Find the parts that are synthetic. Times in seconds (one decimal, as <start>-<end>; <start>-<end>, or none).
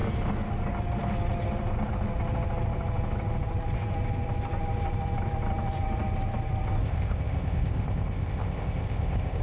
6.8-9.4